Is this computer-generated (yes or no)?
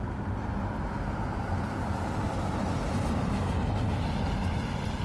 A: no